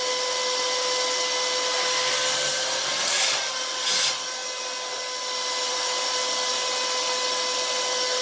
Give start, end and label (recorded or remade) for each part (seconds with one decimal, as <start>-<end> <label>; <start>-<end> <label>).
0.0-8.2 recorded